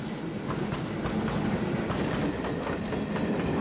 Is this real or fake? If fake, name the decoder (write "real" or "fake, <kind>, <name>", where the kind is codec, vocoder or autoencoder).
real